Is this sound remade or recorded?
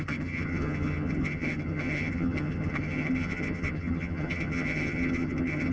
remade